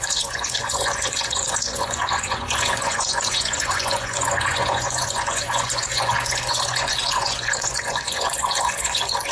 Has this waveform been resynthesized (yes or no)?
yes